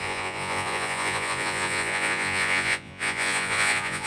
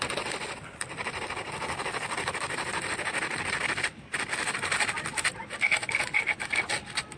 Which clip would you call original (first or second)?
second